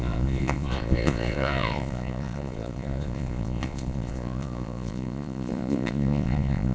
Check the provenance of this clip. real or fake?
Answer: fake